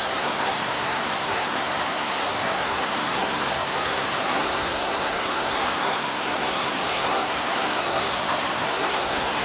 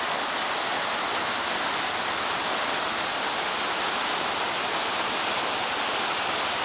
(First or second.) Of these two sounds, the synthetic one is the first